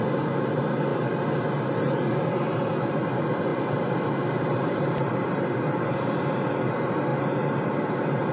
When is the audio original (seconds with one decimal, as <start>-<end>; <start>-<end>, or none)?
0.0-3.5; 6.2-8.3